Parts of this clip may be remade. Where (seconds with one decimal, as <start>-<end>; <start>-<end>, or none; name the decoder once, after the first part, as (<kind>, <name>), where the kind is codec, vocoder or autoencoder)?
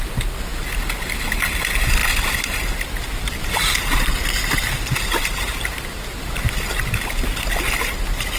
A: none